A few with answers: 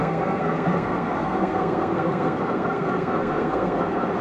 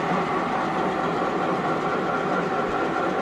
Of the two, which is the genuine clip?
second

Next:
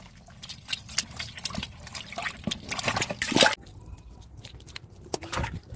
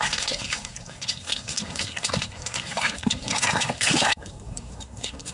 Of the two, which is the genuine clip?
first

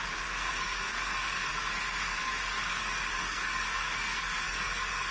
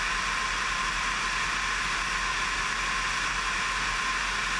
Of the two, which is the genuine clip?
second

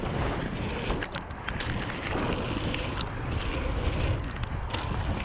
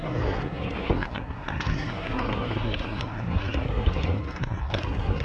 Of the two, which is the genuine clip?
first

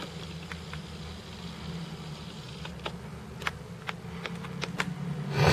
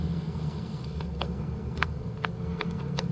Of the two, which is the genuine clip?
first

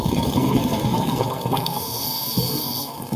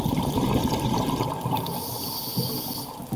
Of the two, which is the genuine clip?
second